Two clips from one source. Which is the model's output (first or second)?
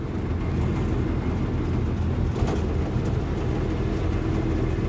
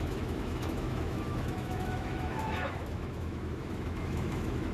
second